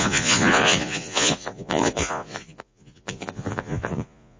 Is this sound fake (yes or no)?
yes